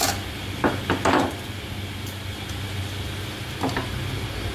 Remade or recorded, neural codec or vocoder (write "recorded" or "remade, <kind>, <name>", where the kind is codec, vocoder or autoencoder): recorded